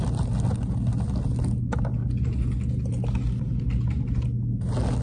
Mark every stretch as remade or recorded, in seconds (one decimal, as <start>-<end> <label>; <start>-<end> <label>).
0.0-5.0 recorded

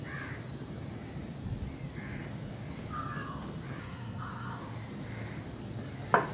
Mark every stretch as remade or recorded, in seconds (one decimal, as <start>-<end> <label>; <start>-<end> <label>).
0.0-3.8 recorded; 3.8-4.6 remade; 4.6-6.3 recorded

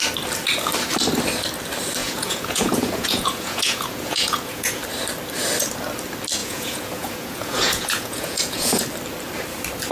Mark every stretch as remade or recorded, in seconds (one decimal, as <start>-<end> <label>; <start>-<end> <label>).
0.0-2.0 recorded; 2.0-4.8 remade; 4.8-6.4 recorded; 6.4-8.8 remade; 8.8-9.9 recorded

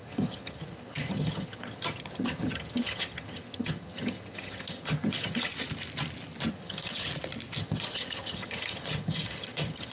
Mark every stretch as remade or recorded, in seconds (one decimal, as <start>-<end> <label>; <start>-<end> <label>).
0.0-5.5 remade; 5.5-6.5 recorded; 6.5-7.1 remade; 7.1-7.6 recorded; 7.6-9.9 remade

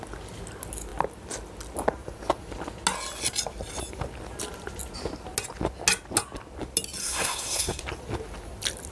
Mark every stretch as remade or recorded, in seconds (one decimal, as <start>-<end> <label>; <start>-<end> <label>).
0.0-7.0 recorded; 7.0-7.8 remade; 7.8-8.9 recorded

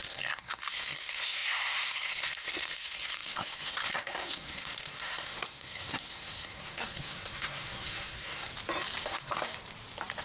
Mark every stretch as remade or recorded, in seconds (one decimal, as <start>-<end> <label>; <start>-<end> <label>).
0.0-8.5 remade; 8.5-9.0 recorded; 9.0-9.5 remade; 9.5-10.2 recorded

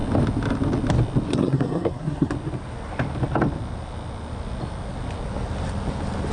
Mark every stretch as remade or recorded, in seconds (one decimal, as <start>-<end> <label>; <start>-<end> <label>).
0.0-1.3 recorded; 1.3-2.3 remade; 2.3-6.3 recorded